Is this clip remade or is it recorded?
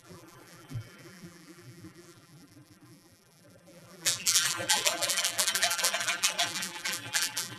remade